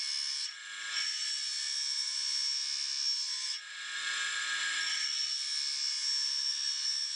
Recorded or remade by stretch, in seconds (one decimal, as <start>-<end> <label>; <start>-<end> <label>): 0.0-7.2 recorded